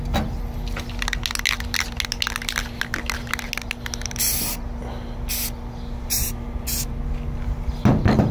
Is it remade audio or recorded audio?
recorded